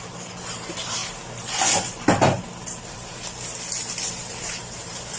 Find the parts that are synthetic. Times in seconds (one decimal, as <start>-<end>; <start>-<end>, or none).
0.0-1.0; 4.1-5.2